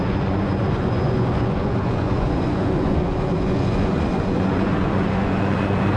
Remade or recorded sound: remade